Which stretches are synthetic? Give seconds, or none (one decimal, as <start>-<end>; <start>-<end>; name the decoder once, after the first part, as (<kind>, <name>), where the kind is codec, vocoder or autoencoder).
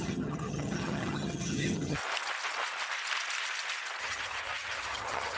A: 0.0-2.0 (vocoder, HiFi-GAN); 4.0-5.4